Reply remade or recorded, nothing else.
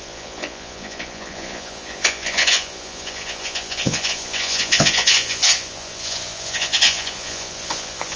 remade